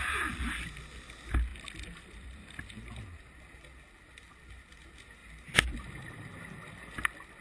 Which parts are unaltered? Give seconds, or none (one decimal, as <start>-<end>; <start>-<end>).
0.0-1.5; 2.6-5.2; 6.4-7.4